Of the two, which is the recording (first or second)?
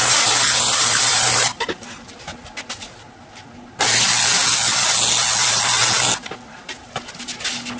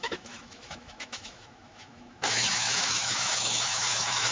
first